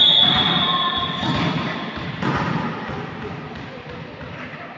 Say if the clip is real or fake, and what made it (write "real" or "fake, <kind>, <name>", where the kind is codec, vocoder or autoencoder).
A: real